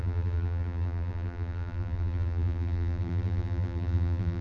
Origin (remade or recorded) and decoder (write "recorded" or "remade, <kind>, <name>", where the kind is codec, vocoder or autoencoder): remade, vocoder, BigVGAN v2